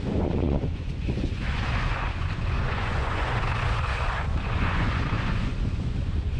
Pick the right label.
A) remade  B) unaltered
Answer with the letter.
A